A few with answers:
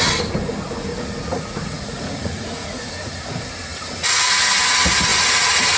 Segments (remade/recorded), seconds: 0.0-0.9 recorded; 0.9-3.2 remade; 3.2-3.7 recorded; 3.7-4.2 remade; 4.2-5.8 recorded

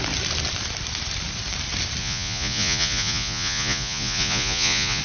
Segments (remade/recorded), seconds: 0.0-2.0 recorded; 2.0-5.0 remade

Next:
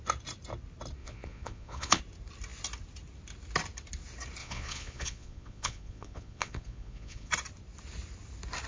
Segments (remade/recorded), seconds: 0.0-1.0 recorded; 1.0-2.0 remade; 2.0-4.4 recorded; 4.4-7.3 remade; 7.3-8.7 recorded

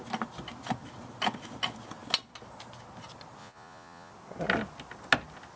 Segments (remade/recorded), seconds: 0.0-3.4 recorded; 3.4-4.1 remade; 4.1-5.6 recorded

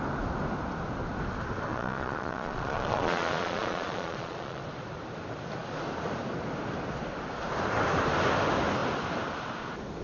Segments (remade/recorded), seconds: 0.0-1.7 recorded; 1.7-4.6 remade; 4.6-10.0 recorded

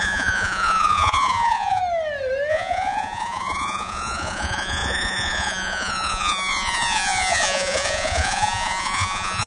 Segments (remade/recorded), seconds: 0.0-1.8 remade; 1.8-2.5 recorded; 2.5-9.5 remade